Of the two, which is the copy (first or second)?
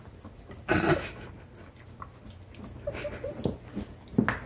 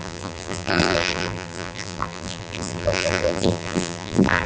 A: second